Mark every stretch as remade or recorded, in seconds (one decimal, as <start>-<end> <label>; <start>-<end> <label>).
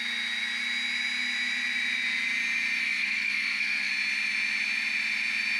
0.0-2.8 recorded; 2.8-3.9 remade; 3.9-5.6 recorded